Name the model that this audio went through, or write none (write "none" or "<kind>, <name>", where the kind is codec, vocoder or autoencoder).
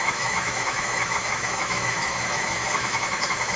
autoencoder, DAC-VAE